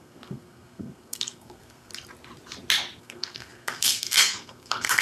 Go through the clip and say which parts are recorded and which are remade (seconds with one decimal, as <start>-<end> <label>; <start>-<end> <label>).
0.0-1.9 remade; 1.9-3.0 recorded; 3.0-5.0 remade

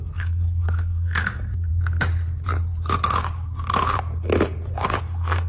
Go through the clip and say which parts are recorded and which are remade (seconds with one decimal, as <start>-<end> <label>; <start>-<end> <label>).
0.0-1.7 remade; 1.7-5.0 recorded; 5.0-5.5 remade

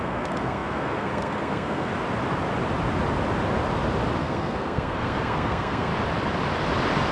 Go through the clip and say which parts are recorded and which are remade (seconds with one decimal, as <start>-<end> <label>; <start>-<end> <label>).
0.0-1.9 remade; 1.9-4.2 recorded; 4.2-5.9 remade; 5.9-7.1 recorded

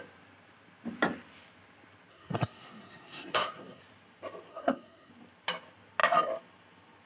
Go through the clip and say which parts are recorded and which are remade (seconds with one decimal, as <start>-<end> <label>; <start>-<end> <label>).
0.0-2.1 recorded; 2.1-3.8 remade; 3.8-4.5 recorded; 4.5-5.1 remade; 5.1-7.1 recorded

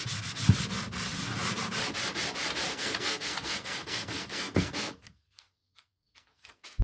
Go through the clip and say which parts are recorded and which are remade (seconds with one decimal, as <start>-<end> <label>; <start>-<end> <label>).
0.0-2.7 recorded; 2.7-6.8 remade

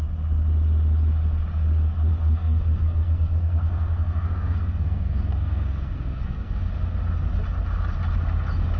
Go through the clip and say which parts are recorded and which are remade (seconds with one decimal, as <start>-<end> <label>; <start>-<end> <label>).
0.0-2.1 recorded; 2.1-6.7 remade; 6.7-8.8 recorded

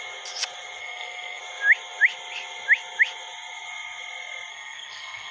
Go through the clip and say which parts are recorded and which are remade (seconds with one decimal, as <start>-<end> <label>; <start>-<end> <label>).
0.0-0.8 recorded; 0.8-1.4 remade; 1.4-4.5 recorded; 4.5-5.3 remade